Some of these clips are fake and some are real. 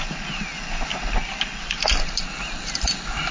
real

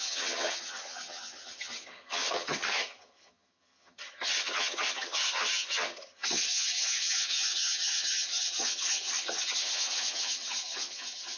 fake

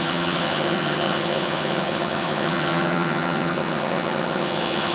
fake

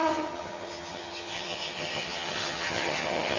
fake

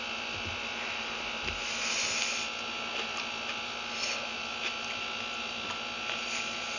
real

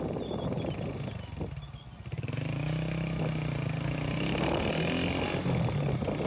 real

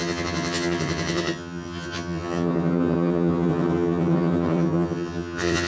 fake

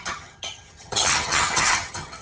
fake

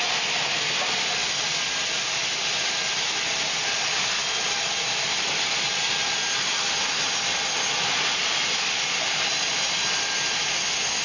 real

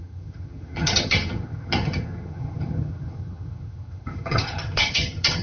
fake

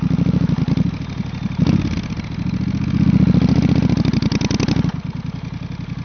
real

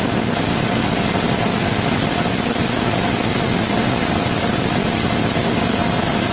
real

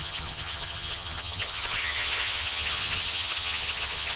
fake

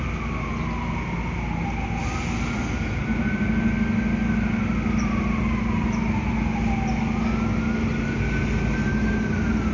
real